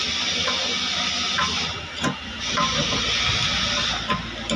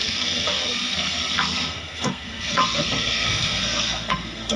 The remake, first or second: second